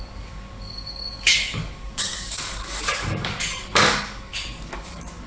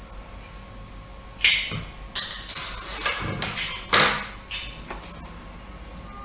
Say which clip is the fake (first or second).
first